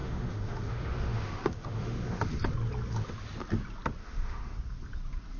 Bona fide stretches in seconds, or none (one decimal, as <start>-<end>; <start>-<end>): 2.3-4.0; 4.6-5.4